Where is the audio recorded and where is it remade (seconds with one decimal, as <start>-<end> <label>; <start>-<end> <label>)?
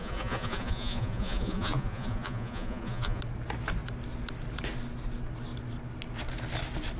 0.0-3.2 remade; 3.2-7.0 recorded